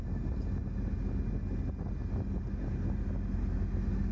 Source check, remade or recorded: recorded